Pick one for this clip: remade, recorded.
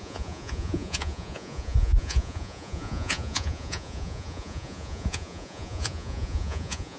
remade